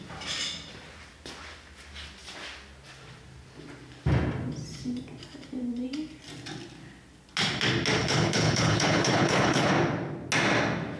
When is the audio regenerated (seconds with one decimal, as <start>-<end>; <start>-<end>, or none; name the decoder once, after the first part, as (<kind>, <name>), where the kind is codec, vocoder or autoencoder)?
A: 8.0-9.7 (codec, HILCodec)